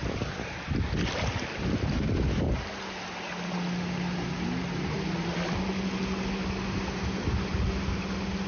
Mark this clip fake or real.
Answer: real